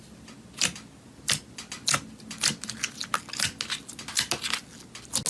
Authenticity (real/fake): real